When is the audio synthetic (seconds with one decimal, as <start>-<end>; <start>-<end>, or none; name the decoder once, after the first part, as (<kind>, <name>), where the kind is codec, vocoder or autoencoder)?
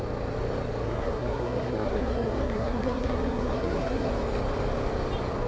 0.8-4.1 (codec, SNAC)